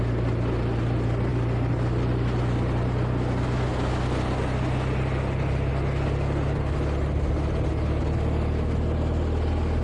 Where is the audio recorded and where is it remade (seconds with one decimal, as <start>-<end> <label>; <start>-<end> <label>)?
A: 0.0-9.8 recorded